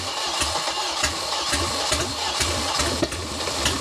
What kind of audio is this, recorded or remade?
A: recorded